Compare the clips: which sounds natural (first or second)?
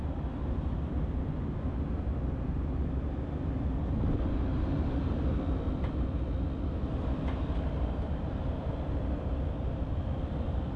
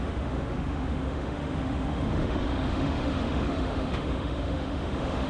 first